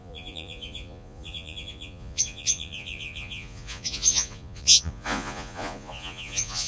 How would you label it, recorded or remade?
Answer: remade